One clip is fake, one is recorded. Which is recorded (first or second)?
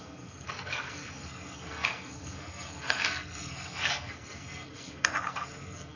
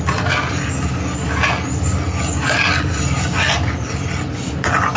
second